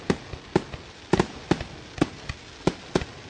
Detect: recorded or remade recorded